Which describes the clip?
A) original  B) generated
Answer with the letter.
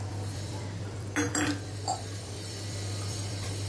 B